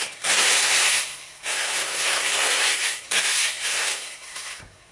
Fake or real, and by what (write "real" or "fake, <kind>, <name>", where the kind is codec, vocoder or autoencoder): fake, codec, SNAC